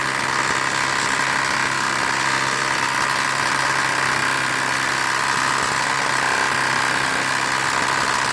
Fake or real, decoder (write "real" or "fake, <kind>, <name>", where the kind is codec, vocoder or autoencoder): real